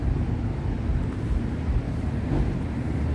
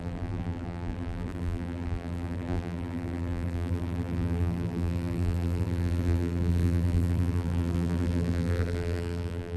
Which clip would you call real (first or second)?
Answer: first